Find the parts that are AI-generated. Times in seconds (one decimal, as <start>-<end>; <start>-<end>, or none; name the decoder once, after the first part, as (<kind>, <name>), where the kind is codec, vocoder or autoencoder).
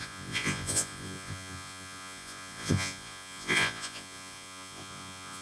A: 0.0-5.4 (vocoder, Vocos)